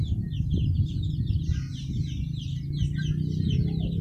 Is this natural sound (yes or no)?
yes